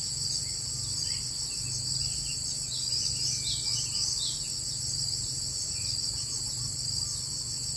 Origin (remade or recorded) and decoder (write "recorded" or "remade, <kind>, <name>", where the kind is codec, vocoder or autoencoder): recorded